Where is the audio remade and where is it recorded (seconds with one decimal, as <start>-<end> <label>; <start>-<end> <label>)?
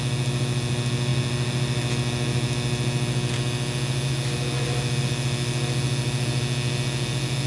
0.0-7.5 recorded